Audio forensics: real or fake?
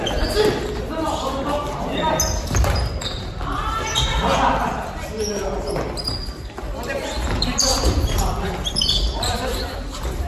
real